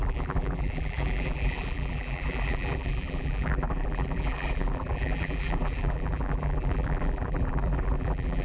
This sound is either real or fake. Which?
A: fake